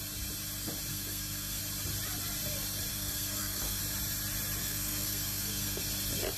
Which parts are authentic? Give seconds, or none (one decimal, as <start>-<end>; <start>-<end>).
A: 0.0-0.9; 1.6-2.9; 3.8-4.6; 5.8-6.4